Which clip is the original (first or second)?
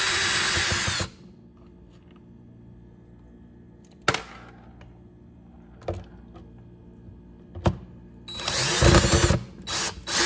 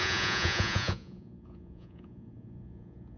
first